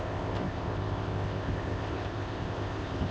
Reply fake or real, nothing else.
fake